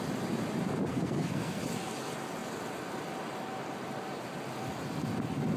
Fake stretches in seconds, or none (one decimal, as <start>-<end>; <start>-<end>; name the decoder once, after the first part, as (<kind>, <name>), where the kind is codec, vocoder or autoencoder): 0.9-1.6 (codec, SNAC)